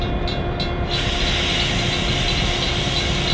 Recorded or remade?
recorded